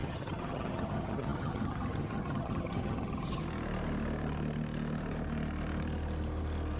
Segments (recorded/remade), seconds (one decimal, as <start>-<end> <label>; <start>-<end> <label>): 0.0-3.4 remade; 3.4-6.8 recorded